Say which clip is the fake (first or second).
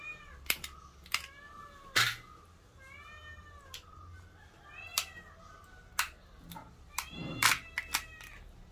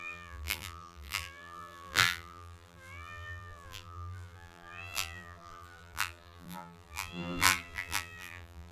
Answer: second